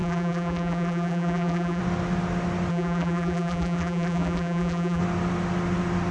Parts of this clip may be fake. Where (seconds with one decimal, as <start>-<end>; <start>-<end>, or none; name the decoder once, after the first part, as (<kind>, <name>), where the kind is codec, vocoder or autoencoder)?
0.0-1.8 (vocoder, BigVGAN v2); 2.7-5.0